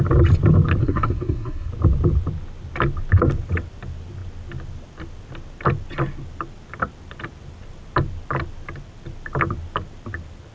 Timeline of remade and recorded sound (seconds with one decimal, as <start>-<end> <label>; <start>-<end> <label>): 0.0-0.8 recorded; 0.8-1.7 remade; 1.7-10.5 recorded